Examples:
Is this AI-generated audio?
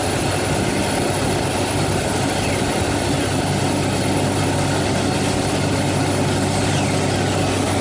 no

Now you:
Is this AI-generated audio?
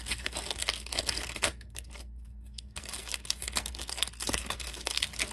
yes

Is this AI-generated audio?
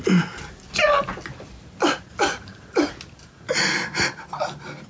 no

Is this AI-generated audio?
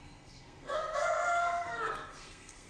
yes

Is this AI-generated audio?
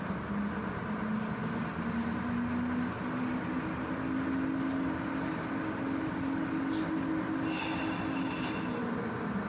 no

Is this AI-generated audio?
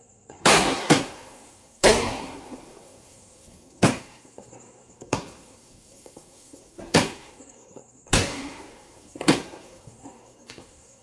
yes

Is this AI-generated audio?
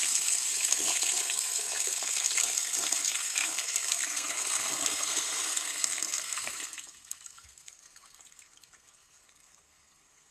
yes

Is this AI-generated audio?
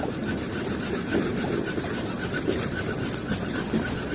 no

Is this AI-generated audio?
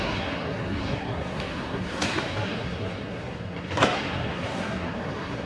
yes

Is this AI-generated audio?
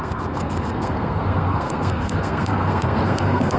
yes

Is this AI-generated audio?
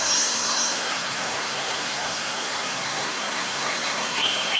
yes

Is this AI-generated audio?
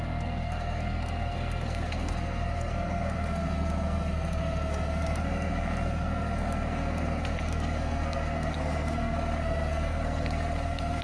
yes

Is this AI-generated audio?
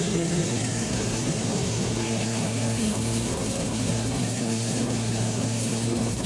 yes